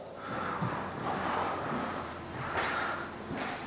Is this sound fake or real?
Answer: fake